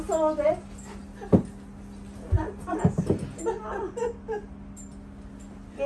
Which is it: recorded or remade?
recorded